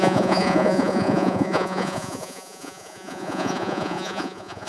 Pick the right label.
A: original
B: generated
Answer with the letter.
B